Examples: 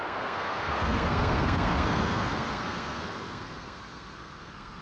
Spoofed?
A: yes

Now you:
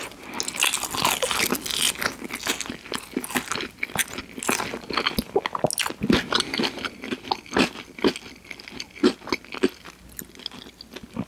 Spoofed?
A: no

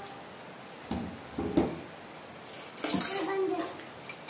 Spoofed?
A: no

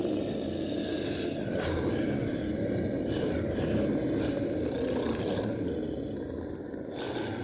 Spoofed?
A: no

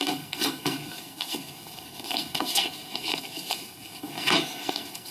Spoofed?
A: yes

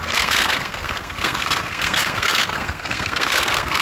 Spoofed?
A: yes